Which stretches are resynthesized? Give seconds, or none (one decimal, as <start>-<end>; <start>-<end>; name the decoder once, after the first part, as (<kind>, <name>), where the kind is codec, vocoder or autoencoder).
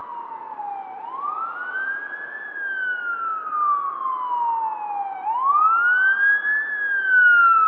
none